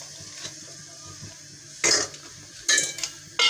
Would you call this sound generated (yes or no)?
no